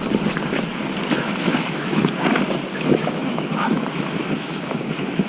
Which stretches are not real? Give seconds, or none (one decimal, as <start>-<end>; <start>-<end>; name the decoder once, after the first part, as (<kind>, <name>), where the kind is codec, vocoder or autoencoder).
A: 1.2-2.0 (autoencoder, DAC-VAE); 2.9-5.3